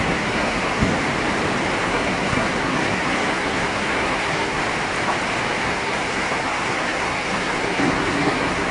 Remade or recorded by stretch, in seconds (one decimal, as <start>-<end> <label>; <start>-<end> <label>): 0.0-0.9 remade; 0.9-1.8 recorded; 1.8-4.6 remade; 4.6-5.6 recorded; 5.6-8.7 remade